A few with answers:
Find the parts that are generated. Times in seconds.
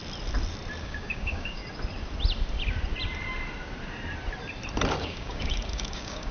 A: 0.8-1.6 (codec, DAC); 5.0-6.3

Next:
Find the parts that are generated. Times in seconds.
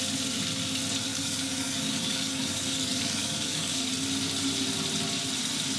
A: 1.1-3.9 (codec, DAC)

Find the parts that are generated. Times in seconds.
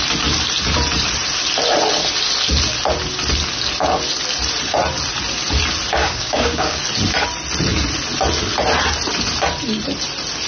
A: 6.0-6.8 (codec, DAC)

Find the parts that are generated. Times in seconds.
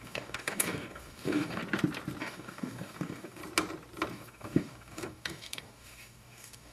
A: 0.0-1.6 (codec, DAC); 2.2-3.4; 4.1-6.7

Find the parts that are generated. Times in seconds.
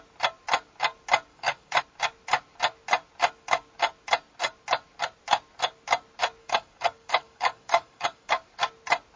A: 1.3-1.8 (codec, DAC); 6.4-8.3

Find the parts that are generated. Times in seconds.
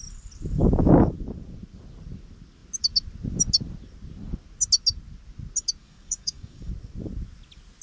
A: 5.8-6.7 (codec, DAC)